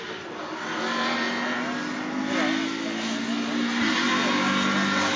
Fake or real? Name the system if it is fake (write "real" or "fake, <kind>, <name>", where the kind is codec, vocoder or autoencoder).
real